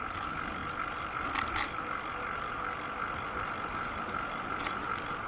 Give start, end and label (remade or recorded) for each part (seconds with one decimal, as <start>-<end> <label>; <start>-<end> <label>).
0.0-5.3 recorded